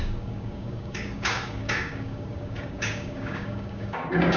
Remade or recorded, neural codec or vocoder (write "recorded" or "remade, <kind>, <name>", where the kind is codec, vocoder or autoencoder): remade, codec, DAC